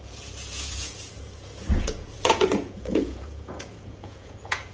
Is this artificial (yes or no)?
yes